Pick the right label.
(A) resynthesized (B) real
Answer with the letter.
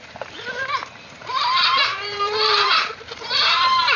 A